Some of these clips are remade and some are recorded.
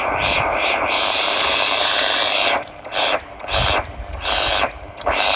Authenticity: remade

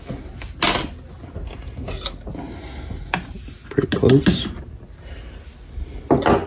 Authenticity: recorded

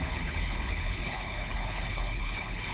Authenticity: remade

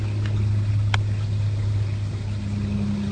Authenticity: recorded